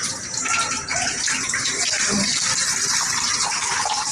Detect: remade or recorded remade